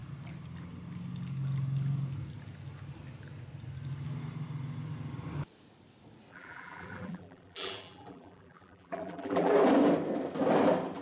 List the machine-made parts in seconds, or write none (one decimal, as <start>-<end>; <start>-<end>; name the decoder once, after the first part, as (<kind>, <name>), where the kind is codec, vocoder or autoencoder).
6.3-9.5 (vocoder, BigVGAN v2)